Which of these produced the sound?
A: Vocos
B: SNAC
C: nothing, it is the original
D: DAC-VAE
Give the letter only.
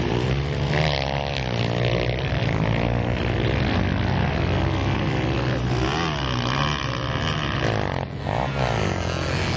C